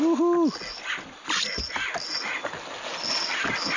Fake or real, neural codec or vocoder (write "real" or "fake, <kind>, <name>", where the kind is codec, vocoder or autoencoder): real